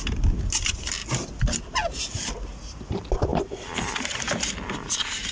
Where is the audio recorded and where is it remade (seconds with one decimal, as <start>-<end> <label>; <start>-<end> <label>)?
0.0-5.3 recorded